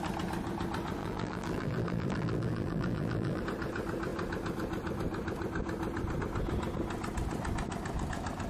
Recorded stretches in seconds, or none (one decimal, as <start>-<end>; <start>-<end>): 0.0-1.0; 3.4-8.5